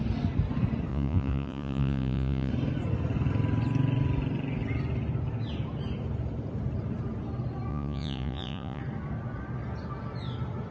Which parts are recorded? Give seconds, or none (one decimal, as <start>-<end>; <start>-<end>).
0.0-0.9; 2.5-7.7; 8.8-10.7